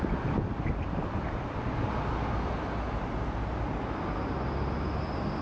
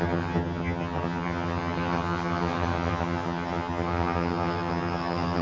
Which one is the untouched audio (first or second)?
first